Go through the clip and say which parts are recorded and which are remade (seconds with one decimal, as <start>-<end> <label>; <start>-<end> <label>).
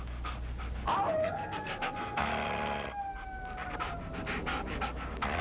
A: 0.0-1.2 recorded; 1.2-2.3 remade; 2.3-5.4 recorded